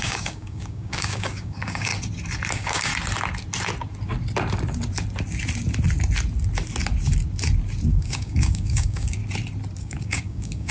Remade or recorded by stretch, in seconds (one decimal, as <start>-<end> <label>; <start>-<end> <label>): 0.0-1.9 remade; 1.9-2.5 recorded; 2.5-2.9 remade; 2.9-7.9 recorded; 7.9-9.2 remade; 9.2-9.8 recorded; 9.8-10.7 remade